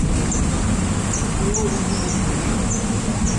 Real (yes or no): yes